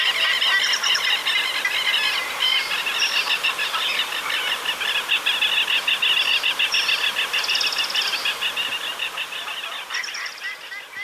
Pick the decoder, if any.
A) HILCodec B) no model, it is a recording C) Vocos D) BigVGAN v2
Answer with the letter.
B